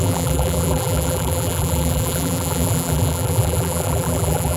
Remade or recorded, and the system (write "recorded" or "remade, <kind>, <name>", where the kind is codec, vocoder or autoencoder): remade, vocoder, BigVGAN v2